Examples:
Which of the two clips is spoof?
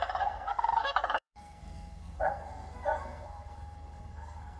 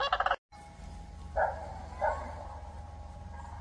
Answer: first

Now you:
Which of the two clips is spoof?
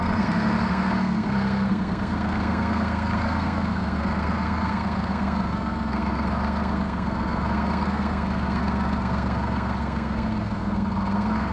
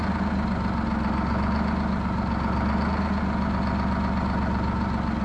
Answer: first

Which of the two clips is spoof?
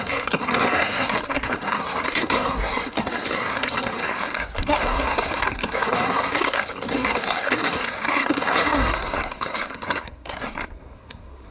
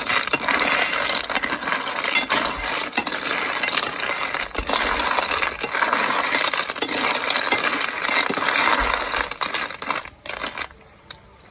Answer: first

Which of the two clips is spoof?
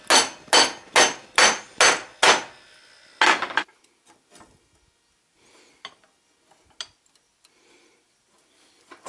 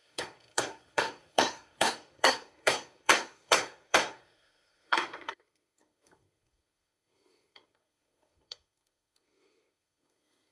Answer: second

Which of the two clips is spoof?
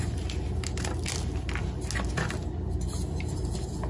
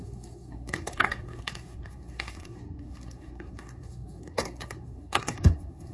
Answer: second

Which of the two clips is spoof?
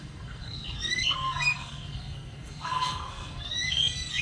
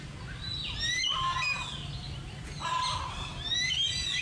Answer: first